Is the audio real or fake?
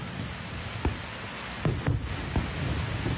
real